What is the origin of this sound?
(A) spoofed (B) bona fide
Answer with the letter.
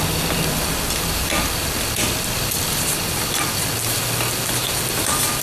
B